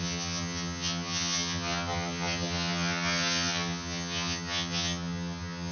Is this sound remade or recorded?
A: remade